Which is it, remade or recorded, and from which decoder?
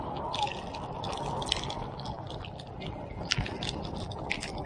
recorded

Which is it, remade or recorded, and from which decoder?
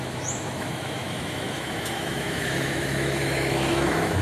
remade, autoencoder, DAC-VAE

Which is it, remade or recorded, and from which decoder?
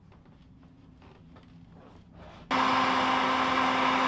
recorded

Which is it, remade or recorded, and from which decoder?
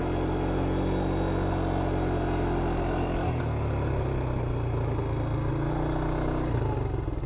recorded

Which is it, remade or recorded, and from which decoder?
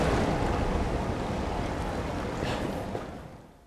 recorded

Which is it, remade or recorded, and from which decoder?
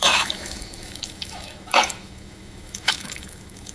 remade, autoencoder, DAC-VAE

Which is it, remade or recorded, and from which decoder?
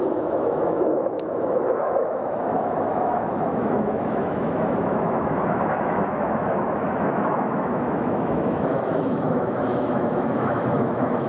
remade, autoencoder, DAC-VAE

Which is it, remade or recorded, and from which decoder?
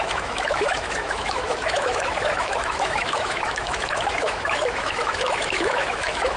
remade, autoencoder, DAC-VAE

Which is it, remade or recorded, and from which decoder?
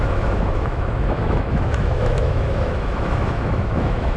remade, autoencoder, DAC-VAE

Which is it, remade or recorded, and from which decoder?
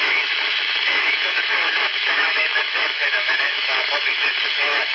remade, autoencoder, DAC-VAE